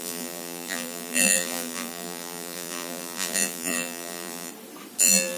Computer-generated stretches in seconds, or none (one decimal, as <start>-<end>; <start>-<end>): 0.0-4.5; 5.0-5.4